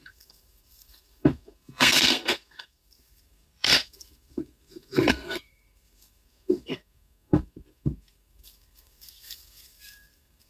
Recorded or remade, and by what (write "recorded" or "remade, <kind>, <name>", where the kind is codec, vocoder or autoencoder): remade, codec, SNAC